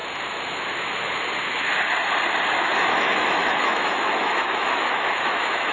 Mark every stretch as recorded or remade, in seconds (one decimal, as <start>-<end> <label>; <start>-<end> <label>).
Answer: 0.0-2.6 recorded; 2.6-5.7 remade